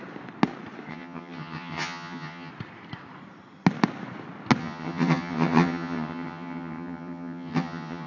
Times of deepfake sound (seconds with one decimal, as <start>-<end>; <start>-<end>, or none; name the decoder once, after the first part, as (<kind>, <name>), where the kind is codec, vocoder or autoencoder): 0.9-2.5 (vocoder, HiFi-GAN); 4.6-8.1